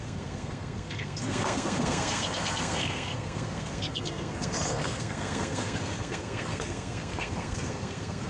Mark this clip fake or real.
fake